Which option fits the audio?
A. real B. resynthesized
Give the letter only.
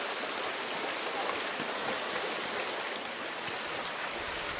A